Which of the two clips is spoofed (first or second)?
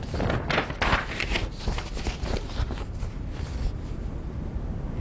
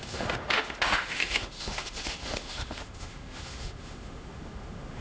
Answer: second